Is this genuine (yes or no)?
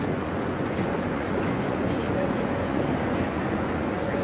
no